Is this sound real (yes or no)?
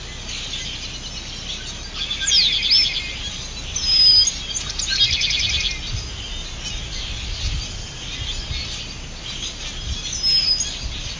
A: yes